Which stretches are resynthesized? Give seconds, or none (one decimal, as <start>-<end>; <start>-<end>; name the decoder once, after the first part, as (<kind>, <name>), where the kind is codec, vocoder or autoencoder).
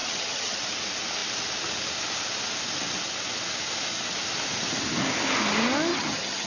0.0-0.6 (vocoder, HiFi-GAN); 5.9-6.5